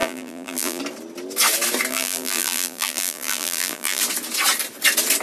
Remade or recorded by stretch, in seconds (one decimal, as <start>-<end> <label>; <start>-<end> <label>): 0.0-0.8 remade; 0.8-1.9 recorded; 1.9-4.0 remade; 4.0-5.2 recorded